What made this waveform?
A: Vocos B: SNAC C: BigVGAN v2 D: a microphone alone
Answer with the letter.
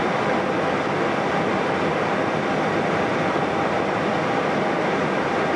D